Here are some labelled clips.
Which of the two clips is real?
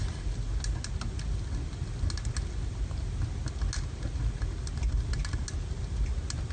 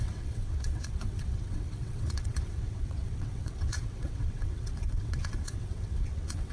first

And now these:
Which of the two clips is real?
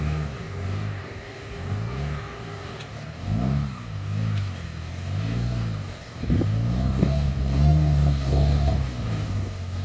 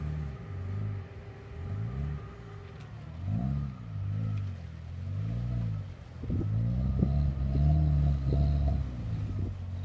second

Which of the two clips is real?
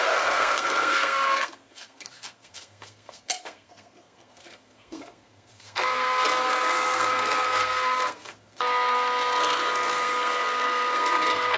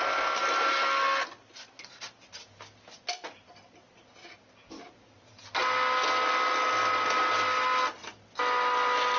second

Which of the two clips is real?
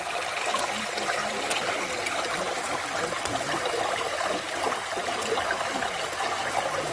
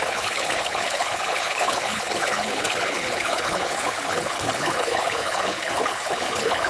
first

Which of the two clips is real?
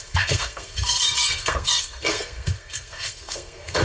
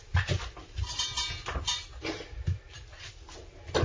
second